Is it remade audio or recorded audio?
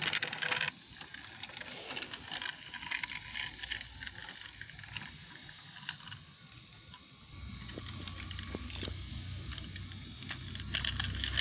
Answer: recorded